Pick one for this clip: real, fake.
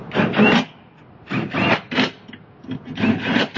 real